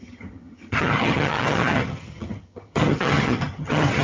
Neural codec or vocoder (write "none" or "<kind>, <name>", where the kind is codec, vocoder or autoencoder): vocoder, HiFi-GAN